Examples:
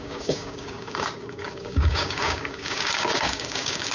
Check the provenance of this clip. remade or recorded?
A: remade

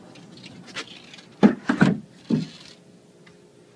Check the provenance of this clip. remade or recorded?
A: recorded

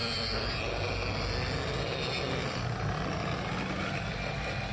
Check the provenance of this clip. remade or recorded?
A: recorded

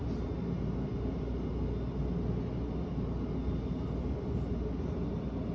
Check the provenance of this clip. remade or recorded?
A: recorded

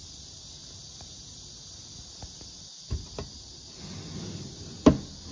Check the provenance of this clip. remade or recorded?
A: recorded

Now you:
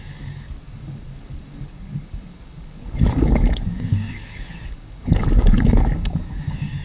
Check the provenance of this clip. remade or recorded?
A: remade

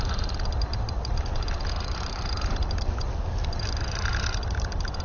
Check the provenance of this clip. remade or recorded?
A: recorded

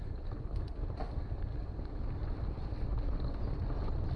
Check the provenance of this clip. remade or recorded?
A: recorded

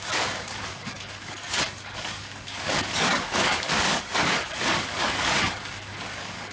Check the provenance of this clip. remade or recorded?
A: remade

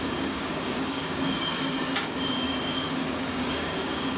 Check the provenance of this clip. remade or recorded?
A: remade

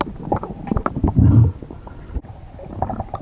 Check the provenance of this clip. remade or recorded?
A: recorded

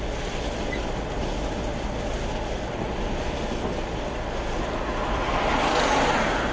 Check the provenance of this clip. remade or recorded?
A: recorded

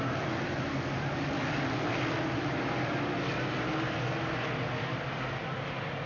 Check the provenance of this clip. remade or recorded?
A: recorded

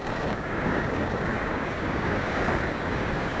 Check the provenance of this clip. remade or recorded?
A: remade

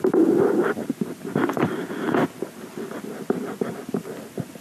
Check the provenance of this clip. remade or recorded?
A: recorded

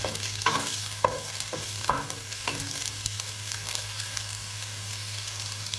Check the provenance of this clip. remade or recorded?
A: remade